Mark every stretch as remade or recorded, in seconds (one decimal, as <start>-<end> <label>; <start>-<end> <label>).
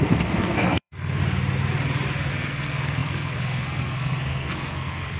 0.0-1.2 remade; 1.2-2.3 recorded; 2.3-5.2 remade